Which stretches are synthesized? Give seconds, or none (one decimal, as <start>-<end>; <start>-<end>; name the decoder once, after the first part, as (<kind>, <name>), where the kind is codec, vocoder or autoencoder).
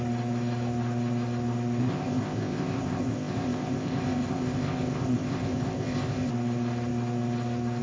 1.8-6.3 (codec, ZipCodec)